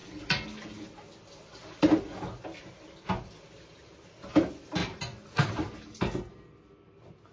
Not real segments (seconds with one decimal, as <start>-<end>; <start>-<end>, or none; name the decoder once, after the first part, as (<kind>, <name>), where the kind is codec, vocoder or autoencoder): none